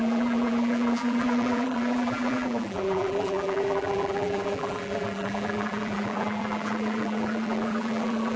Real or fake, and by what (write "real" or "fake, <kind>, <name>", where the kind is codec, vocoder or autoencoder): fake, vocoder, BigVGAN v2